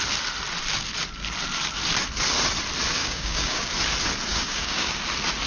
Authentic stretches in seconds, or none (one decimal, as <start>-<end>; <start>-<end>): 0.0-3.0; 3.7-4.3; 5.0-5.5